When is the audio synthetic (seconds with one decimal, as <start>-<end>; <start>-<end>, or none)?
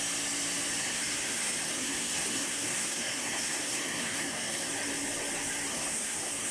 0.8-4.7; 5.7-6.5